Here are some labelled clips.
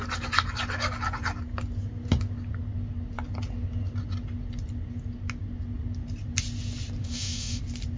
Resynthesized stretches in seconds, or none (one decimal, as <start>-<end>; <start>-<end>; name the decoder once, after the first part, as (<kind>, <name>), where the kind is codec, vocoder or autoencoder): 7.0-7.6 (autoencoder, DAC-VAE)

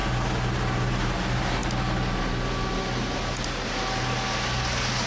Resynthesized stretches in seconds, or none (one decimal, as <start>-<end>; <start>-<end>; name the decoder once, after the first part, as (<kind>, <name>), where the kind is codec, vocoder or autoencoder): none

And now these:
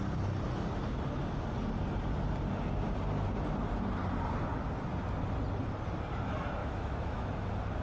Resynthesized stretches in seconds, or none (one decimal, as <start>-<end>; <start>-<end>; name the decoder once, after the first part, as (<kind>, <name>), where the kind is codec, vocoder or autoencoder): 6.6-7.3 (autoencoder, DAC-VAE)

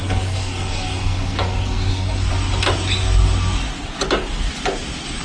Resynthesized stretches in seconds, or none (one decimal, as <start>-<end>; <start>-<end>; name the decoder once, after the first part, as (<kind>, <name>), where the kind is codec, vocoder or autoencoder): 0.0-2.3 (codec, SNAC)

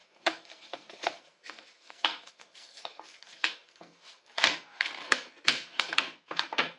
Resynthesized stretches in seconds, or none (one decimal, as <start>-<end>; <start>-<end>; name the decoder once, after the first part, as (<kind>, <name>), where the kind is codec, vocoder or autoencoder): 0.0-6.8 (codec, SNAC)

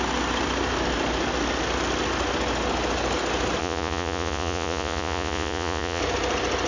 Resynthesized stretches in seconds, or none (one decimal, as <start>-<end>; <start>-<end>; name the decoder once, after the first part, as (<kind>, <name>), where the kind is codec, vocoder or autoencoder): 3.6-6.0 (vocoder, Vocos)